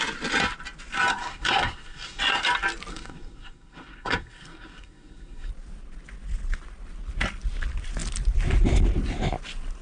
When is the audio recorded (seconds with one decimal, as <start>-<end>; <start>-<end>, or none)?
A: 0.0-1.1; 2.2-2.9; 5.5-9.8